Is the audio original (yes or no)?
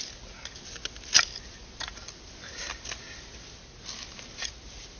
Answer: yes